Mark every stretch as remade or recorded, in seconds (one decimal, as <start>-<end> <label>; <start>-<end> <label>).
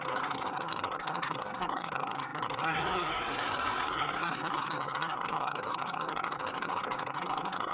0.0-7.7 remade